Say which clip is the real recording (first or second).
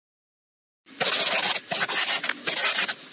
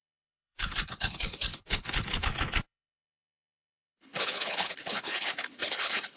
first